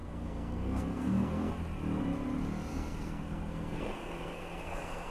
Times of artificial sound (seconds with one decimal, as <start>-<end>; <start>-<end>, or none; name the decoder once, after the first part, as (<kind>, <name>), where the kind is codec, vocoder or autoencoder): 0.0-1.5 (codec, SNAC); 2.7-5.1